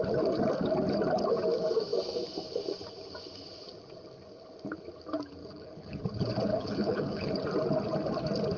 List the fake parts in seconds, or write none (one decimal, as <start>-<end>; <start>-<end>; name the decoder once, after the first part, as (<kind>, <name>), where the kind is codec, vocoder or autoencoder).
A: 5.4-6.0 (codec, HILCodec); 6.5-7.3